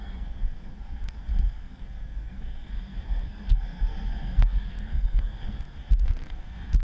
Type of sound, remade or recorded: remade